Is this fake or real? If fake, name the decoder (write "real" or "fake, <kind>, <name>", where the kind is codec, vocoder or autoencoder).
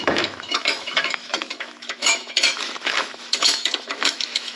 fake, autoencoder, DAC-VAE